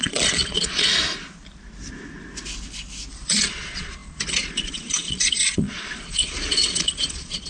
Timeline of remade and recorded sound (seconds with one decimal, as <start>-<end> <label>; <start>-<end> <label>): 0.0-0.9 remade; 0.9-3.1 recorded; 3.1-7.5 remade

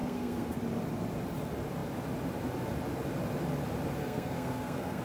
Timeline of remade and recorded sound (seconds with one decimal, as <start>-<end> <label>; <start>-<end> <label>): 0.0-0.6 remade; 0.6-4.0 recorded; 4.0-5.0 remade

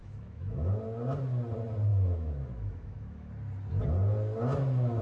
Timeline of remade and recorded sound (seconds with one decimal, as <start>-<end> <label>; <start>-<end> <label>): 0.0-0.7 remade; 0.7-1.9 recorded; 1.9-3.3 remade; 3.3-5.0 recorded

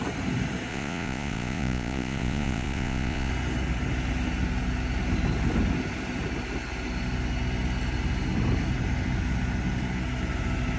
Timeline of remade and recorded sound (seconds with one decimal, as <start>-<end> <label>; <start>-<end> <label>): 0.0-0.7 recorded; 0.7-3.3 remade; 3.3-10.8 recorded